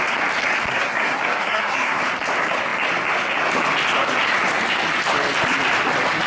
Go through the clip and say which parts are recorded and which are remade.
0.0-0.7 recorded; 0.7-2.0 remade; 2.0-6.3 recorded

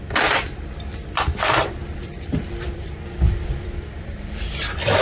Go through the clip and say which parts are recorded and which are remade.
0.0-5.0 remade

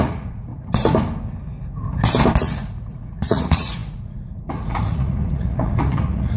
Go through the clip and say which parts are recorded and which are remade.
0.0-0.5 remade; 0.5-2.4 recorded; 2.4-6.4 remade

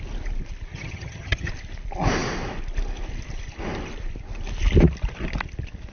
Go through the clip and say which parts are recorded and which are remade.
0.0-0.7 recorded; 0.7-1.5 remade; 1.5-5.9 recorded

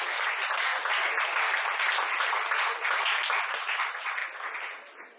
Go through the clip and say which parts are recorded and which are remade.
0.0-0.7 remade; 0.7-3.5 recorded; 3.5-4.2 remade; 4.2-5.2 recorded

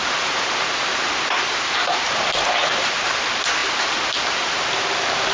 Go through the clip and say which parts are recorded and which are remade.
0.0-3.2 remade; 3.2-3.6 recorded; 3.6-4.6 remade; 4.6-5.3 recorded

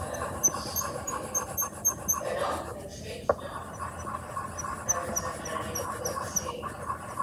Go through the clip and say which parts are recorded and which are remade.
0.0-7.2 recorded

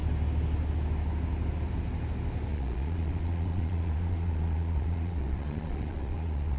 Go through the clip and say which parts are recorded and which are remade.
0.0-2.5 recorded; 2.5-6.6 remade